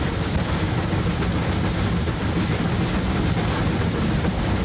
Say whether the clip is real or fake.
real